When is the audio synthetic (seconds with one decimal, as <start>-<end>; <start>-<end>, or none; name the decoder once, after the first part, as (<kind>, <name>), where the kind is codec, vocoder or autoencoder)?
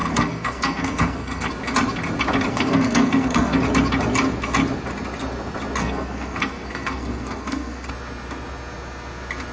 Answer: 0.0-1.5 (codec, SNAC); 2.5-3.6; 5.8-7.9